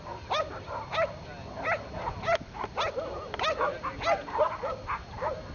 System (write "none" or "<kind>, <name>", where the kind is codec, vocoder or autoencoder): none